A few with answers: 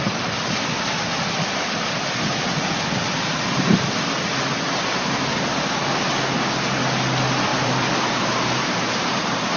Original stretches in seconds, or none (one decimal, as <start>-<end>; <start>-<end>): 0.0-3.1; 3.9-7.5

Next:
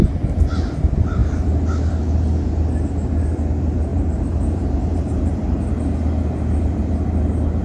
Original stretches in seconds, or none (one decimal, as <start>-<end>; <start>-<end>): 0.0-3.9; 5.7-7.6

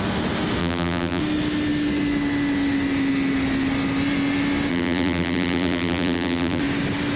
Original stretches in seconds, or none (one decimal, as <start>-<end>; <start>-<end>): 0.0-0.6; 1.2-4.7; 6.6-7.2

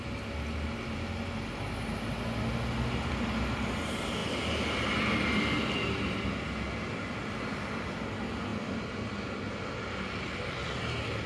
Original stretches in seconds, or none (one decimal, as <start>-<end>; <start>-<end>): 0.0-4.2; 5.0-11.3